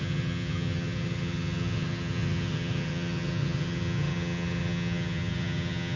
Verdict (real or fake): fake